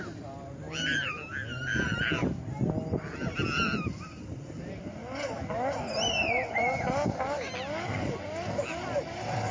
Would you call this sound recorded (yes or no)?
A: yes